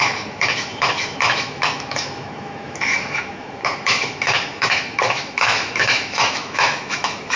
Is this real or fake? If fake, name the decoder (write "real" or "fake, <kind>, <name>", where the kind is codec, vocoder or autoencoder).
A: fake, autoencoder, DAC-VAE